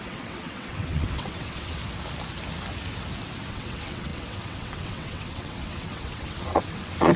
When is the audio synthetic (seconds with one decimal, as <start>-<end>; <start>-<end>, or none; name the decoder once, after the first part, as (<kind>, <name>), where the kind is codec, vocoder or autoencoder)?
0.0-1.8 (vocoder, WaveNeXt); 3.5-7.2